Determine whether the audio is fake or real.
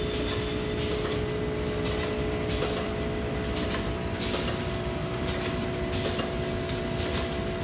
real